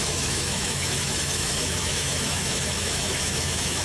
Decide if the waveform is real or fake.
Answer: fake